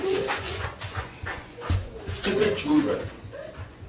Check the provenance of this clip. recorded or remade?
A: remade